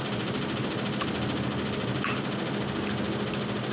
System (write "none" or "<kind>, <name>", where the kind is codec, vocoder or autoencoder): none